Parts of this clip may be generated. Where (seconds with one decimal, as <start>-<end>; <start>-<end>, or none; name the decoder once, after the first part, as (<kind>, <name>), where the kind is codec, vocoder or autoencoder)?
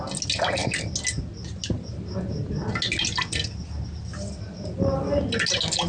none